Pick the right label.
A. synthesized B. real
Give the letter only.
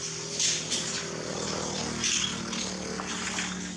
B